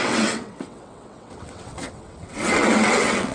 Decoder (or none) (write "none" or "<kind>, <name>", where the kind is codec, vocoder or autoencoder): vocoder, WaveNeXt